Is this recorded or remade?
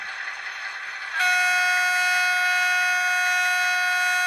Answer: recorded